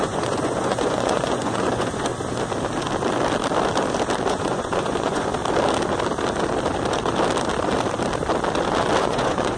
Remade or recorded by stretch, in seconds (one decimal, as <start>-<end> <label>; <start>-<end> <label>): 0.0-2.1 remade; 2.1-4.3 recorded; 4.3-5.3 remade; 5.3-9.0 recorded; 9.0-9.6 remade